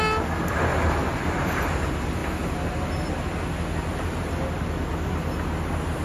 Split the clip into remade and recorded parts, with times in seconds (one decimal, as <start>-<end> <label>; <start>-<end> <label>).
0.0-0.7 recorded; 0.7-1.6 remade; 1.6-6.0 recorded